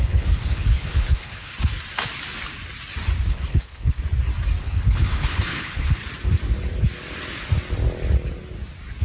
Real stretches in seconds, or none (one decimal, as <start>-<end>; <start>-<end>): 1.5-3.3; 4.0-4.6; 6.0-9.0

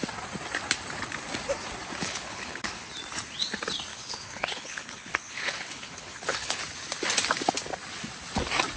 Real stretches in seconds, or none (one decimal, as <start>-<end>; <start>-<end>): 0.0-2.0; 2.9-3.9; 6.6-8.8

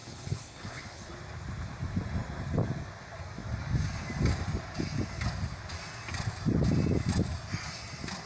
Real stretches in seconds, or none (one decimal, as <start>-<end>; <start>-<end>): 1.1-8.3